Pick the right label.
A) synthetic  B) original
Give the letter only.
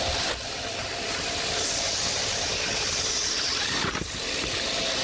B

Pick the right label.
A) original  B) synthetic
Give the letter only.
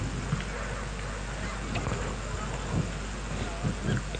A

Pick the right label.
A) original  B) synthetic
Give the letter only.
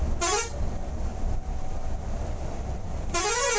A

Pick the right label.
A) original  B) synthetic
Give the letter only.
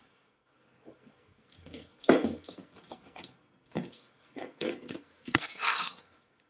B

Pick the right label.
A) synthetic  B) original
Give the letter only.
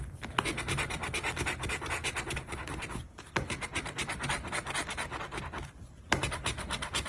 B